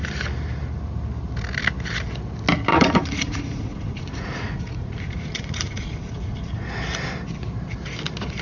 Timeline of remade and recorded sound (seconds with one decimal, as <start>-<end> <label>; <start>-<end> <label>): 0.0-2.7 recorded; 2.7-6.7 remade; 6.7-8.4 recorded